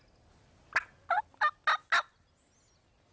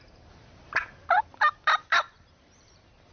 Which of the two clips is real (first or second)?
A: first